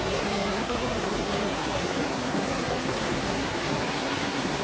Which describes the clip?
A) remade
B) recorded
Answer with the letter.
A